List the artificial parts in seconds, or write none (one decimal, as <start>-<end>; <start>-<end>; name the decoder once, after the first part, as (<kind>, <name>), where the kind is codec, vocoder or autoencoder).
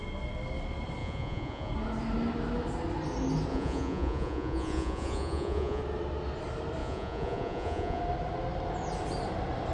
1.0-1.7 (vocoder, Vocos); 3.5-5.8; 6.8-8.0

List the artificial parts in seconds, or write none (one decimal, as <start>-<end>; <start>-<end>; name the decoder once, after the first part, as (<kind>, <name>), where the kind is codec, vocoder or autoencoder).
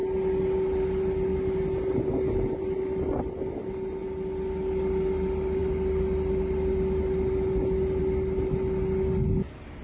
none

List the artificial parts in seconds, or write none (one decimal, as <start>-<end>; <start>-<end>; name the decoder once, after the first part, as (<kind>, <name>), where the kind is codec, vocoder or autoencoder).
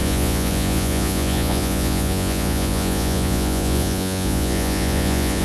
0.0-5.4 (vocoder, Vocos)